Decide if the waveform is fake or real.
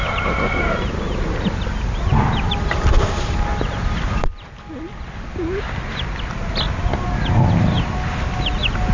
real